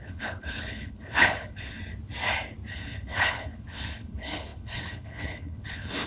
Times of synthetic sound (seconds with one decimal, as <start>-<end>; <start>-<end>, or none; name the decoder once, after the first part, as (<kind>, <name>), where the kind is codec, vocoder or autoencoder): 0.0-1.8 (codec, HILCodec); 2.7-6.1